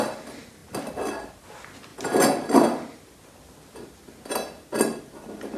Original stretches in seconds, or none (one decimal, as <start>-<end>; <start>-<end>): 0.0-5.6